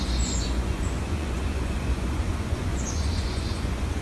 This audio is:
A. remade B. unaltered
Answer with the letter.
A